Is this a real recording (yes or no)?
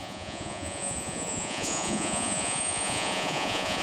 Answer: no